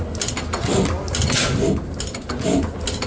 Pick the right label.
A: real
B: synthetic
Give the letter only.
A